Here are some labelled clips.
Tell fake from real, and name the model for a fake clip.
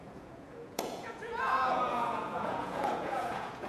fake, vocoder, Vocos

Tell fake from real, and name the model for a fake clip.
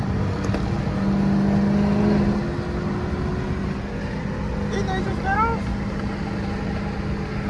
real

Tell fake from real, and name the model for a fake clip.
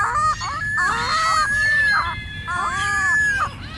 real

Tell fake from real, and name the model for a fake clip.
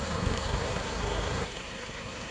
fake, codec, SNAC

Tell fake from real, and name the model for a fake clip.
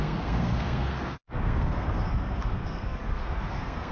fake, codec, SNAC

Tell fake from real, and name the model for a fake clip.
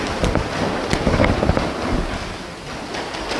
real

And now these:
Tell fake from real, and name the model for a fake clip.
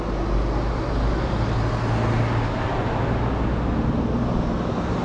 real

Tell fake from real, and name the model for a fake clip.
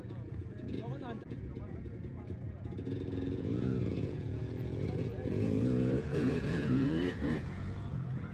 fake, vocoder, Vocos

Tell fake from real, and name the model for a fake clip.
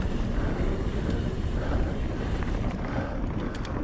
real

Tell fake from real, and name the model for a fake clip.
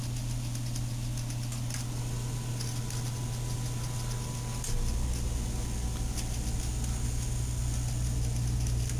real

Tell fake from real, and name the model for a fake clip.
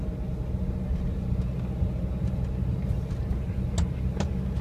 real